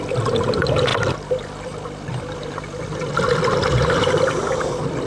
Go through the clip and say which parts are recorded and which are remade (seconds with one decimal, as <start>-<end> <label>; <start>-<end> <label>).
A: 0.0-0.9 recorded; 0.9-3.1 remade; 3.1-3.8 recorded; 3.8-5.1 remade